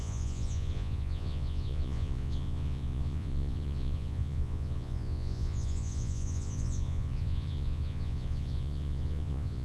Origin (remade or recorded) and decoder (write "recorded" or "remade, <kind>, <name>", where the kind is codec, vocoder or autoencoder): remade, vocoder, Vocos